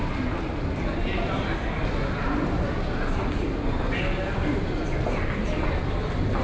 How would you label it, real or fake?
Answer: real